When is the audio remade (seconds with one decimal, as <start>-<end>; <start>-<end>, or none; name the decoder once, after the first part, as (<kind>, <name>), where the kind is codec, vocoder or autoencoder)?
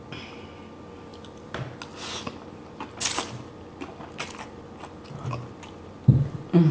none